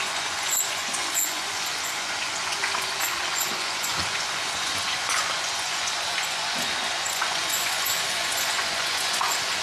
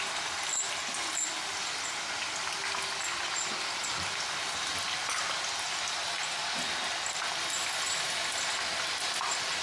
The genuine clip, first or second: second